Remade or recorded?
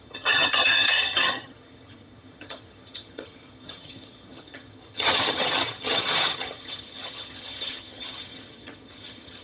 remade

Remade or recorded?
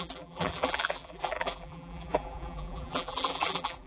remade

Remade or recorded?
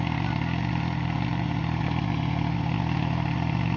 recorded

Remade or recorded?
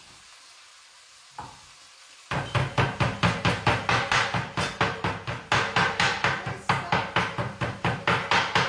recorded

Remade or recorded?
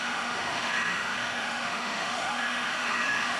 remade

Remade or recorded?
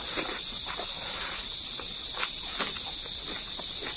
recorded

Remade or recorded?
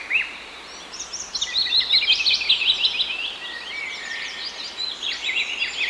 recorded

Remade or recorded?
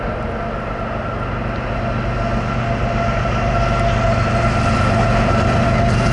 recorded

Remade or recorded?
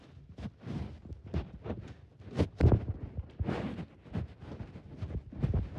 recorded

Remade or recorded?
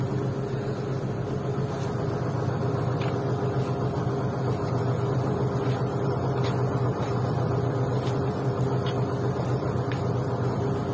recorded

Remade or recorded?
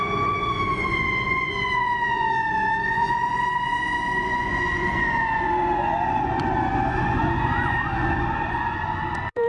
remade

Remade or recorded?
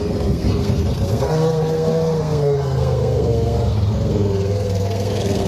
remade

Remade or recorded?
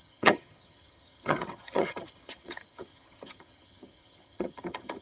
remade